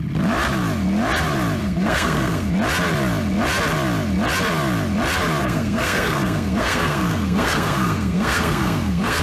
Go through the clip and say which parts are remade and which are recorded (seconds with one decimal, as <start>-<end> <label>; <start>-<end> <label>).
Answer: 0.0-1.6 recorded; 1.6-2.5 remade; 2.5-5.4 recorded; 5.4-9.2 remade